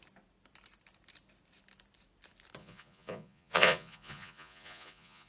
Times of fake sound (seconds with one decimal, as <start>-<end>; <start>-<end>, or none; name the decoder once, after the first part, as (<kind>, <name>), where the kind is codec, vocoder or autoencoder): 2.6-5.3 (vocoder, Vocos)